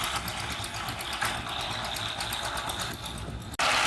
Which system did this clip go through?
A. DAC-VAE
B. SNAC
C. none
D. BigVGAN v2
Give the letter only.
C